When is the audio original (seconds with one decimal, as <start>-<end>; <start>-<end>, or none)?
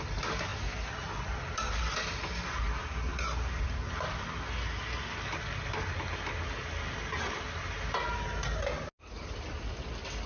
0.0-10.3